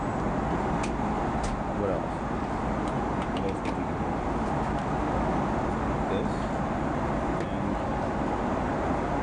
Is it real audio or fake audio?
real